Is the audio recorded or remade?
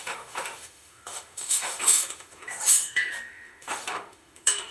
remade